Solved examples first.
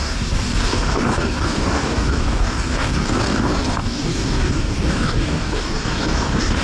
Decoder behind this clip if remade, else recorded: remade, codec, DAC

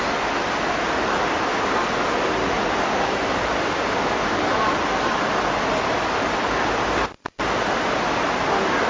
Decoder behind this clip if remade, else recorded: recorded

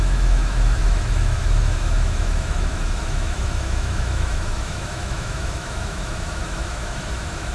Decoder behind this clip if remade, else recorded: remade, autoencoder, DAC-VAE